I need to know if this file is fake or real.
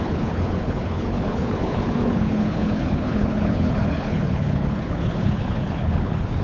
fake